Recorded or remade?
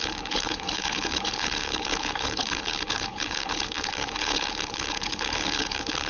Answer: remade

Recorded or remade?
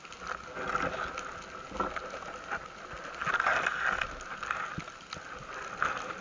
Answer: recorded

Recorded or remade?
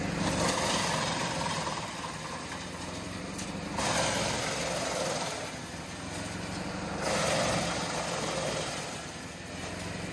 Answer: recorded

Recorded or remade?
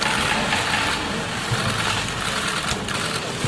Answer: recorded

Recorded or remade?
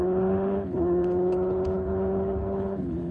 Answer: remade